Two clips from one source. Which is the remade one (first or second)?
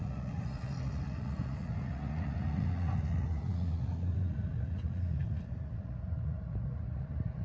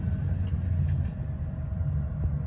first